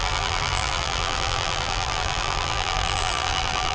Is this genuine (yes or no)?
no